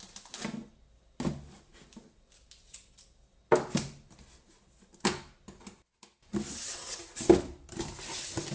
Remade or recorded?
recorded